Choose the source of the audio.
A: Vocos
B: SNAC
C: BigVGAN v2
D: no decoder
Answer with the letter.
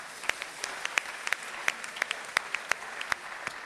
D